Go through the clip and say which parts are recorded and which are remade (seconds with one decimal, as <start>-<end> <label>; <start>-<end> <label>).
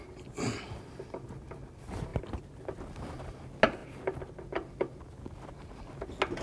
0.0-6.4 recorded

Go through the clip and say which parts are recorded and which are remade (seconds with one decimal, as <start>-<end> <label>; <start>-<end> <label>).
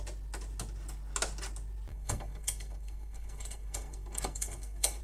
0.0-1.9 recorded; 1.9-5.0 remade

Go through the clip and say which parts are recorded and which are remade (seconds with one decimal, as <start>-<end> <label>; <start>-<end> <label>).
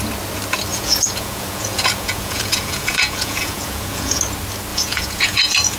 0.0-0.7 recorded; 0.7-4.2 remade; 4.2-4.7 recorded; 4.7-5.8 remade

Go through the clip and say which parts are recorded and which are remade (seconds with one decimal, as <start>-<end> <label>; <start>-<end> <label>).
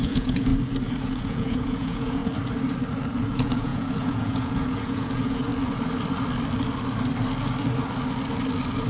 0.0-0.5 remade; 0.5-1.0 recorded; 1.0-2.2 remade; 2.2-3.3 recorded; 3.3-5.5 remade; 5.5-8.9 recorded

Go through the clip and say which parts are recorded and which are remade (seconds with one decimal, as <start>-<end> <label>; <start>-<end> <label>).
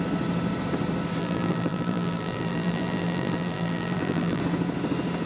0.0-1.2 recorded; 1.2-4.4 remade; 4.4-5.3 recorded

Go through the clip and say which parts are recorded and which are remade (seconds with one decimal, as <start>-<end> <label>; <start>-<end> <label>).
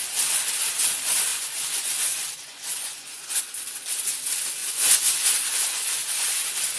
0.0-1.3 recorded; 1.3-3.4 remade; 3.4-4.6 recorded; 4.6-5.3 remade; 5.3-6.8 recorded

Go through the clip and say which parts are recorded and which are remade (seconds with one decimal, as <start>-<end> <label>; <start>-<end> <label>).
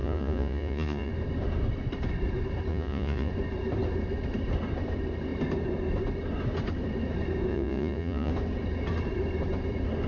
0.0-1.1 remade; 1.1-2.7 recorded; 2.7-3.3 remade; 3.3-7.5 recorded; 7.5-8.3 remade; 8.3-10.1 recorded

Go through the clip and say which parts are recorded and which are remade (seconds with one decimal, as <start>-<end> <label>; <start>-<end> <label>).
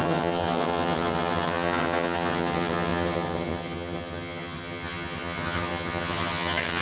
0.0-6.8 remade